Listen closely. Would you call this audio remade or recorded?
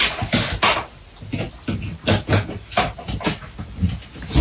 recorded